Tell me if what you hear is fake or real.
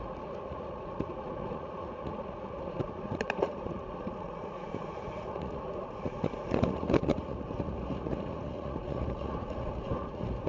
fake